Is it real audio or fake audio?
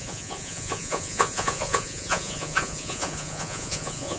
fake